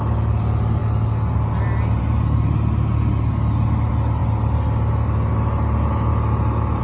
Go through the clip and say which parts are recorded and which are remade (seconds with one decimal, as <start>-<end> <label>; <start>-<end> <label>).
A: 0.0-6.8 recorded